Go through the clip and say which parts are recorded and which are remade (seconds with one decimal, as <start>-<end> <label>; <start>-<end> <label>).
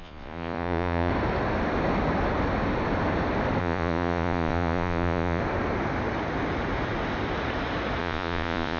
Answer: 0.0-1.1 remade; 1.1-3.6 recorded; 3.6-5.4 remade; 5.4-8.0 recorded; 8.0-8.8 remade